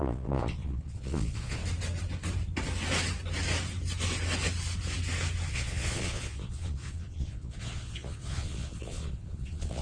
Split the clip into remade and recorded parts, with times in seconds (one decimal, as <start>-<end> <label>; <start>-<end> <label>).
0.0-1.6 remade; 1.6-5.5 recorded; 5.5-9.8 remade